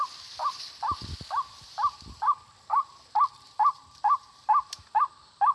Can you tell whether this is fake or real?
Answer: fake